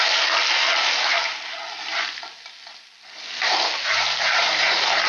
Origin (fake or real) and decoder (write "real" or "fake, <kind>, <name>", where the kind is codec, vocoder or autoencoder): real